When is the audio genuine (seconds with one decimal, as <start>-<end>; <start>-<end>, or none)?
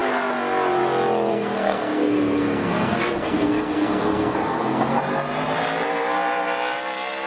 0.0-1.3; 5.0-7.3